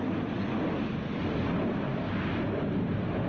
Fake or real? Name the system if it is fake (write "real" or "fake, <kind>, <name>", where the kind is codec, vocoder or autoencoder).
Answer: real